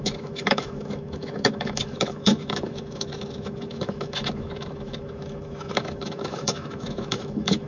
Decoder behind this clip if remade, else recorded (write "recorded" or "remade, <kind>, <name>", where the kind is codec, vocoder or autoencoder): remade, autoencoder, DAC-VAE